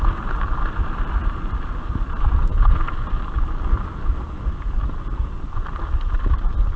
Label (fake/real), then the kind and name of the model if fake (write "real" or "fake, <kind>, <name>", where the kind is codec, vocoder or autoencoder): real